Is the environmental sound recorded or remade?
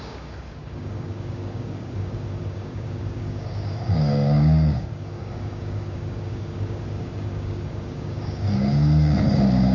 remade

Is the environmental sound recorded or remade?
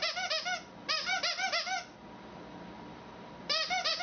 recorded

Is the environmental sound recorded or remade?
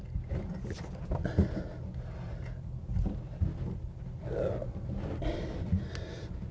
recorded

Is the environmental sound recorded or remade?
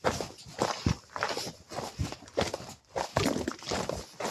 recorded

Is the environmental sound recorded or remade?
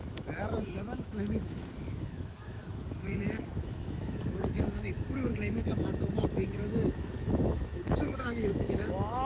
remade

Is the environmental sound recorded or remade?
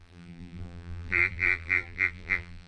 remade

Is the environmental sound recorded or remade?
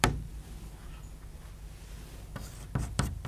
remade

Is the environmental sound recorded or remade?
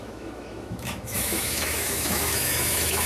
remade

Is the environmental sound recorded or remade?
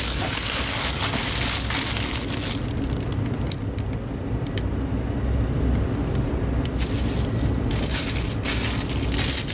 recorded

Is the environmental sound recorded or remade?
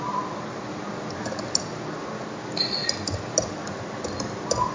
recorded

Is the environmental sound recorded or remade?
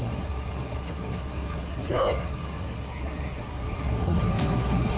remade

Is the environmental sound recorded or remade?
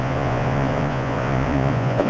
remade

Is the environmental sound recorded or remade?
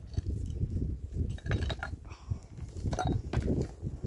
recorded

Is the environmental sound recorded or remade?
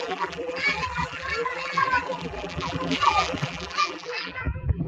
remade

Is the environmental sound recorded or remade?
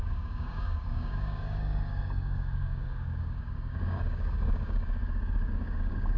remade